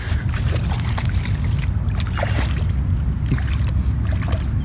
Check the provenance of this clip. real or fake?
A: real